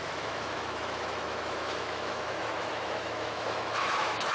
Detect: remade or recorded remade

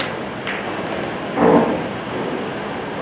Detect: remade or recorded recorded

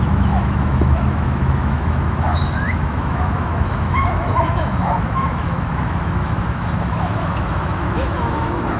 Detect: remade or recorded remade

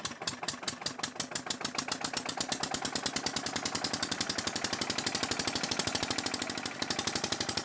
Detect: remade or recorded recorded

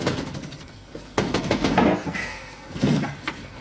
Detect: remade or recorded remade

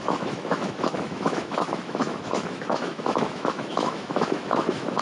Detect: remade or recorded remade